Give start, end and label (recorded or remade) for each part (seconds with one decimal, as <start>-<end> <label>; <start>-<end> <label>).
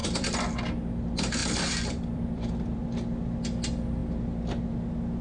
0.0-0.6 remade; 0.6-1.4 recorded; 1.4-2.8 remade; 2.8-5.2 recorded